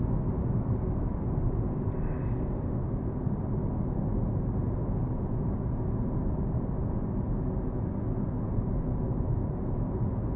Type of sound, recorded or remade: recorded